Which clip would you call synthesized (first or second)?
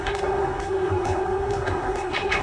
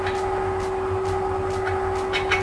first